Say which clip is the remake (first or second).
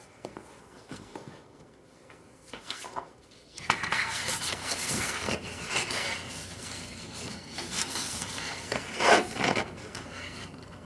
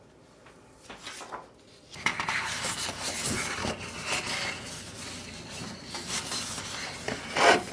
first